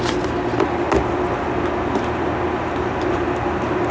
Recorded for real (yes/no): yes